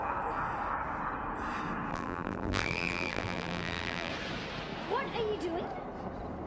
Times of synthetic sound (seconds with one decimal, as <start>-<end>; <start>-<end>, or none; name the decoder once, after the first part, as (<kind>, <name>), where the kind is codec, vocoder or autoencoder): 1.9-4.1 (vocoder, BigVGAN v2)